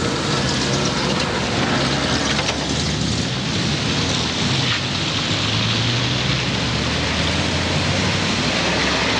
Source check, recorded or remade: recorded